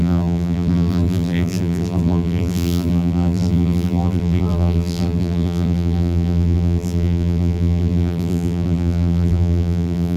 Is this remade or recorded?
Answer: remade